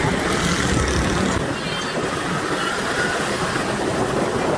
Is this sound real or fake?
real